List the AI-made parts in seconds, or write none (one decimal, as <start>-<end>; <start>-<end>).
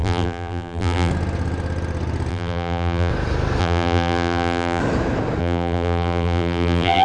0.0-1.1; 2.3-3.1; 3.6-4.8; 5.4-7.0